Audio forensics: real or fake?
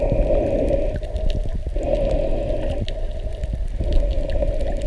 real